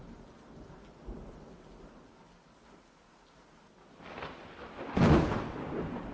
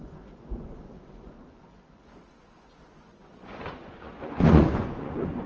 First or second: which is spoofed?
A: second